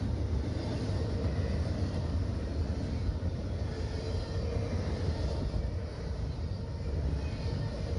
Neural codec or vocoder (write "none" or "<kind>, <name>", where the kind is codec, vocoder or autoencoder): none